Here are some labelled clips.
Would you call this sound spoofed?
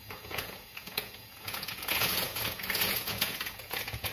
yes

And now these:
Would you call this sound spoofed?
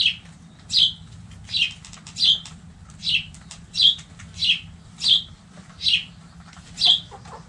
no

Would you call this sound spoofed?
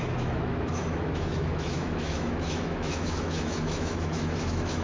yes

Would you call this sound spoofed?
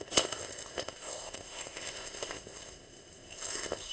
yes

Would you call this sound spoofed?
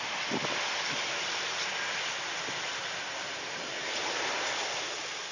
no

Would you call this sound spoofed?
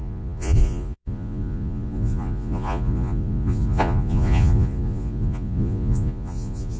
yes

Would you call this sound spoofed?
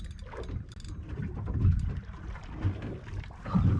no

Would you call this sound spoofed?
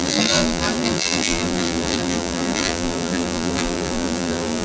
yes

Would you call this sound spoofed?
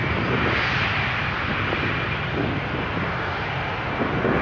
no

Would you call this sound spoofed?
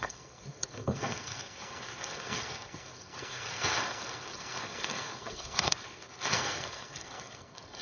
yes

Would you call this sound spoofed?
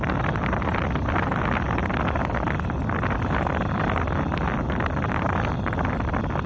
no